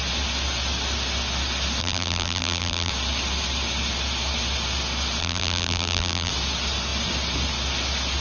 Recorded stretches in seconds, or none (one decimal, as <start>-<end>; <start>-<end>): 0.0-1.8; 2.9-5.2; 6.3-8.2